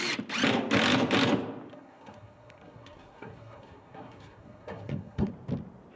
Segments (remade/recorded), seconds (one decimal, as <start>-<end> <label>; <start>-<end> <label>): 0.0-1.7 recorded; 1.7-5.3 remade; 5.3-6.0 recorded